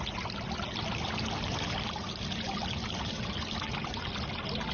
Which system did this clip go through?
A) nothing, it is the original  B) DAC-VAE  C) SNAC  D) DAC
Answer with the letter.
A